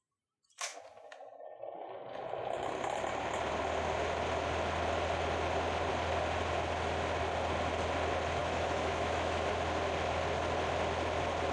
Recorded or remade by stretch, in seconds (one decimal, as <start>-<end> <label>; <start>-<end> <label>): 0.0-8.4 recorded; 8.4-9.5 remade; 9.5-11.5 recorded